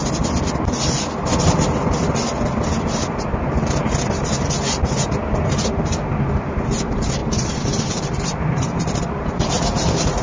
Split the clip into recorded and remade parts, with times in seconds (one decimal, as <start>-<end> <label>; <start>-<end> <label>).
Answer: 0.0-2.7 recorded; 2.7-10.2 remade